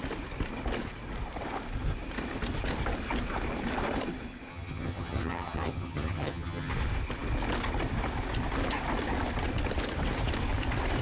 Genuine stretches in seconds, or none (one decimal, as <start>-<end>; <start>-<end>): 0.0-4.5; 6.7-11.0